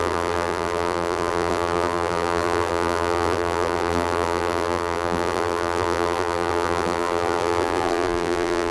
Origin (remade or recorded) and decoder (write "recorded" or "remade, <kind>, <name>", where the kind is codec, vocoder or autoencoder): remade, vocoder, BigVGAN v2